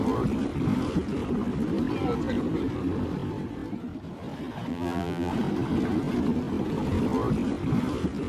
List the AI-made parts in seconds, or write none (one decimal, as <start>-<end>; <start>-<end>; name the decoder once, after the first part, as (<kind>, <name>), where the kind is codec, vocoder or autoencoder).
4.7-5.3 (vocoder, BigVGAN v2)